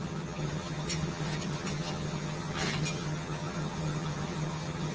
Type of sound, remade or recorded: remade